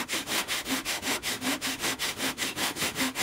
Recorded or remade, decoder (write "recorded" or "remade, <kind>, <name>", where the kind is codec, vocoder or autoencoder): remade, autoencoder, DAC-VAE